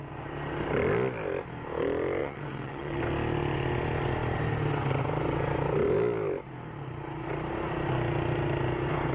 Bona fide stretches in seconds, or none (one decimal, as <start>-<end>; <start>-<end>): 0.0-2.2; 3.0-9.1